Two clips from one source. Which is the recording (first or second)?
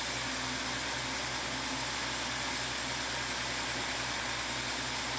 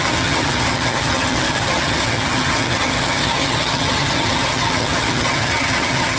first